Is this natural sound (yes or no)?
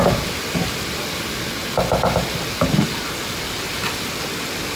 yes